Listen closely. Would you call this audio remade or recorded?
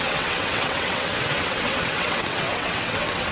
remade